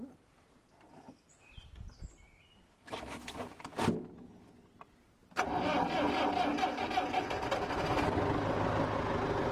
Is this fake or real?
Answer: real